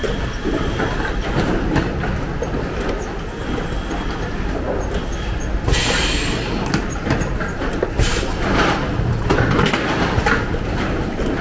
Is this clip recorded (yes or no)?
yes